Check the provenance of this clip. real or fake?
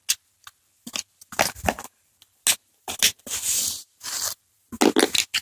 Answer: real